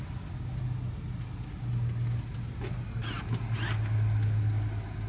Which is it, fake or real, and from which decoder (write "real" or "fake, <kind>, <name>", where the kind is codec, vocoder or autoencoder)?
real